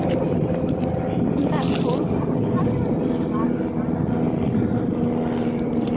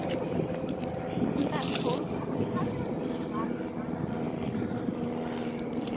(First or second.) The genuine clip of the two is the first